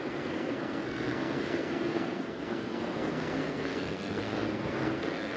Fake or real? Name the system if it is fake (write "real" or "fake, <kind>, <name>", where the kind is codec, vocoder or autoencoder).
fake, codec, SNAC